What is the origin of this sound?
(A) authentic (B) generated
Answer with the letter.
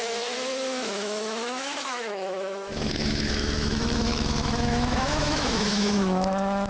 B